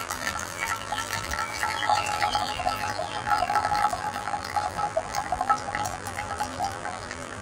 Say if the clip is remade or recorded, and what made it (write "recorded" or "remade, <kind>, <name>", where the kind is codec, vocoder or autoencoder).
remade, vocoder, BigVGAN v2